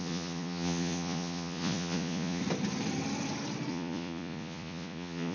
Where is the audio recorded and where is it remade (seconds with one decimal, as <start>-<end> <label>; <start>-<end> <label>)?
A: 0.0-2.4 remade; 2.4-3.7 recorded; 3.7-5.3 remade